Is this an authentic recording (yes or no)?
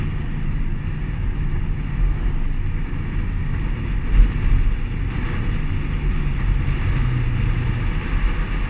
yes